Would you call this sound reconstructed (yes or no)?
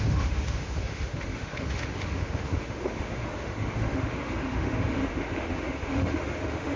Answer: yes